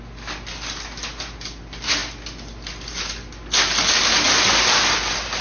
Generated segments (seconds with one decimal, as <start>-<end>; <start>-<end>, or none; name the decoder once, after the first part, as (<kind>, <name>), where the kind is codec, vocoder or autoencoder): none